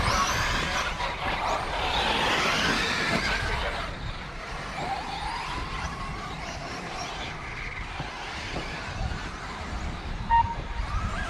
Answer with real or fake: real